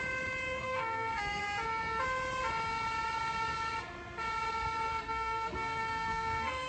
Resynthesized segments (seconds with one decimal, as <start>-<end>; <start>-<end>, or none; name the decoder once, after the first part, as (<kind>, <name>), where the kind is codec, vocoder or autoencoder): 0.6-1.4 (codec, SNAC); 4.9-6.7